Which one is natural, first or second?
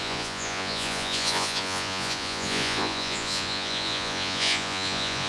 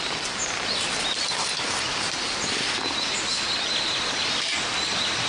second